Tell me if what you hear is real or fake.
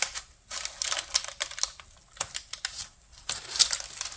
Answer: real